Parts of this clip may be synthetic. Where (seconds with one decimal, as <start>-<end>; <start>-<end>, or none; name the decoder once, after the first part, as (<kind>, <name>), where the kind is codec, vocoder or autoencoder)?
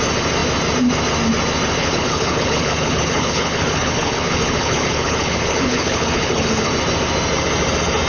1.8-6.7 (codec, HILCodec)